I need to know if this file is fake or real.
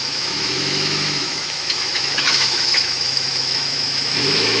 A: fake